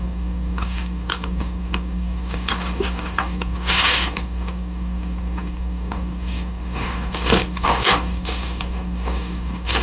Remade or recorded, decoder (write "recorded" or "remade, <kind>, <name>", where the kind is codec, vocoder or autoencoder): remade, codec, DAC